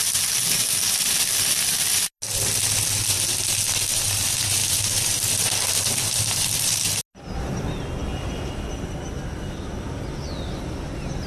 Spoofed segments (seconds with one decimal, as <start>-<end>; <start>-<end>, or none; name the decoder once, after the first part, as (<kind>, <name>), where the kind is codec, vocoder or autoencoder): 4.6-7.0 (vocoder, BigVGAN v2)